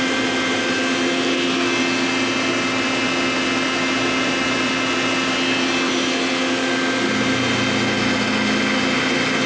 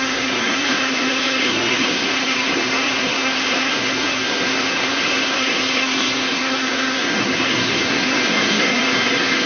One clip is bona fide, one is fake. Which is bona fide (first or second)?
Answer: first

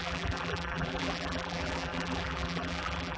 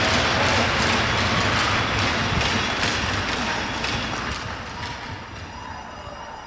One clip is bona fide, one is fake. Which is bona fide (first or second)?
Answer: second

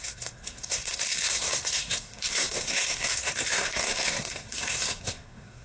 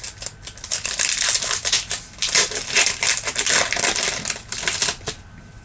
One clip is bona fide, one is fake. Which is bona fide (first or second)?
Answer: second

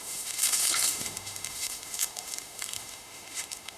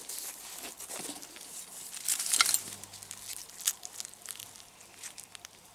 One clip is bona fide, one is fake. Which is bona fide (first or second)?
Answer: second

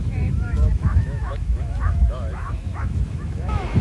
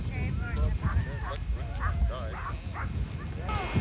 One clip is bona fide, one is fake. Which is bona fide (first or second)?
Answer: second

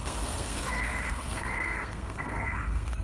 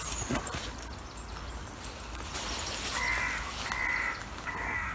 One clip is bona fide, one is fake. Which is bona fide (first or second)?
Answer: second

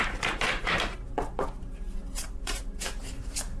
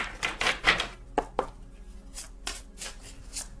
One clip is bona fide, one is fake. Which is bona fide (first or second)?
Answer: second